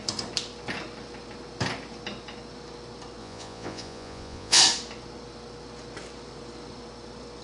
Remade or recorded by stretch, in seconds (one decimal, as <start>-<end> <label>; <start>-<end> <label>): 0.0-3.2 recorded; 3.2-4.6 remade; 4.6-7.4 recorded